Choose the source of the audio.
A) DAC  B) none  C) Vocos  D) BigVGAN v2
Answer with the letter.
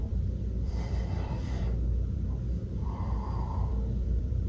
D